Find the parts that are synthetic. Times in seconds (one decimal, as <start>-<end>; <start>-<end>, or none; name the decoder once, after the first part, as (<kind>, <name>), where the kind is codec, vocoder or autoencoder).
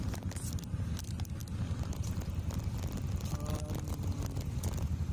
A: none